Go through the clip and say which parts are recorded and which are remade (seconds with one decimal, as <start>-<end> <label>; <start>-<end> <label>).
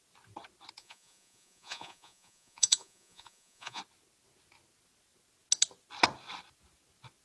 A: 0.0-0.8 recorded; 0.8-3.8 remade; 3.8-7.2 recorded